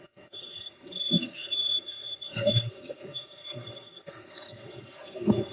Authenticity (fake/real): fake